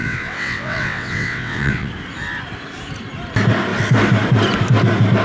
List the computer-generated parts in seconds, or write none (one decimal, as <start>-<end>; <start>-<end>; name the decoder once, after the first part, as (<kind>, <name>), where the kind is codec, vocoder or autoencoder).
0.0-1.9 (vocoder, WaveNeXt)